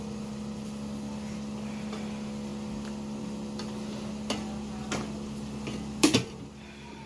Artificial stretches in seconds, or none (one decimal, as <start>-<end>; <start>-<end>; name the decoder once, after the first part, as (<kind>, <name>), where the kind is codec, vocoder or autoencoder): none